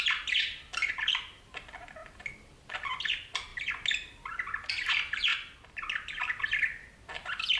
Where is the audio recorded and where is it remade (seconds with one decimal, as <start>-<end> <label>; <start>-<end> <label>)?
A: 0.0-2.0 recorded; 2.0-3.0 remade; 3.0-5.3 recorded; 5.3-5.8 remade; 5.8-7.6 recorded